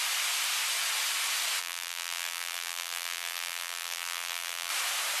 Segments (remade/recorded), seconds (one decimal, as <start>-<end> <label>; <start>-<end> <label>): 0.0-1.6 recorded; 1.6-4.7 remade; 4.7-5.2 recorded